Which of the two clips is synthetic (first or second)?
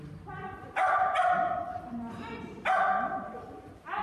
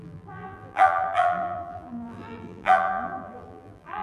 second